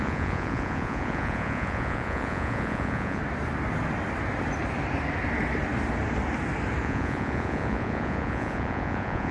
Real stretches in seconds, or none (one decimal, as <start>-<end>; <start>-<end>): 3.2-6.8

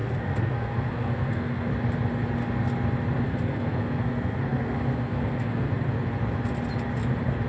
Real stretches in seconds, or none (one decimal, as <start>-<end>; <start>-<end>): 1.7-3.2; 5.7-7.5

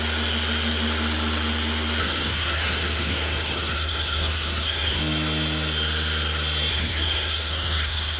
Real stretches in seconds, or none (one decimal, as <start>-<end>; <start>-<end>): 0.0-2.0; 5.0-6.7

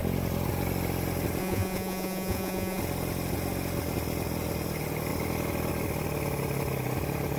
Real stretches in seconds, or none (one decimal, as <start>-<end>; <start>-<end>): 0.0-1.4; 2.8-7.4

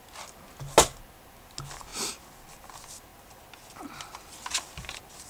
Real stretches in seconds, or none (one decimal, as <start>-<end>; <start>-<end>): 0.0-5.3